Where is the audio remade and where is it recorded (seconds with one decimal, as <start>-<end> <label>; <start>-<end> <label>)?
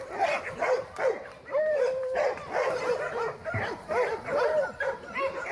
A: 0.0-0.6 recorded; 0.6-2.9 remade; 2.9-3.4 recorded; 3.4-4.4 remade; 4.4-5.5 recorded